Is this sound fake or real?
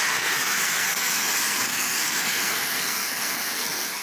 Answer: fake